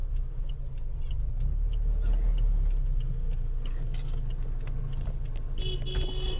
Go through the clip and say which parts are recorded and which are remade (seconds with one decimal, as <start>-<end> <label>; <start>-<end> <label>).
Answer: 0.0-6.4 recorded

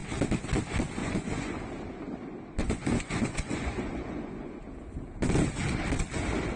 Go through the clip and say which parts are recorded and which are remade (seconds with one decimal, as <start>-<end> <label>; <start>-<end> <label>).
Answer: 0.0-1.0 recorded; 1.0-1.6 remade; 1.6-2.6 recorded; 2.6-4.6 remade; 4.6-6.6 recorded